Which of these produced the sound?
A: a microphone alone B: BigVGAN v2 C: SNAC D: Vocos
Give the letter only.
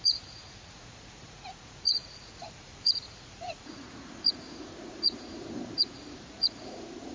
D